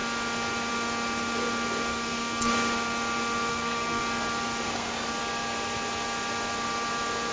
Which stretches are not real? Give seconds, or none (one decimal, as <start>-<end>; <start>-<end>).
1.9-2.5; 3.5-4.0; 4.6-5.1